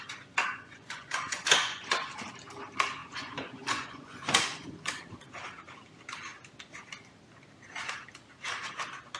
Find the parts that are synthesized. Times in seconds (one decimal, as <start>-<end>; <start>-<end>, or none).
0.4-2.1; 3.0-5.0